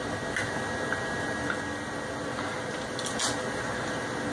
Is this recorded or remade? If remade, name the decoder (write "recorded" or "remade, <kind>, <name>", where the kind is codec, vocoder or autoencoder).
recorded